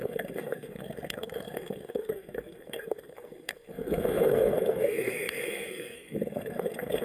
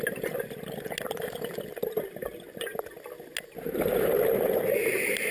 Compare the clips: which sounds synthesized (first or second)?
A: first